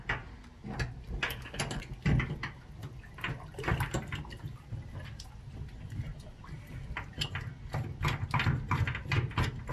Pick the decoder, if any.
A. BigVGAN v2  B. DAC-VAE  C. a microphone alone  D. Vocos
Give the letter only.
C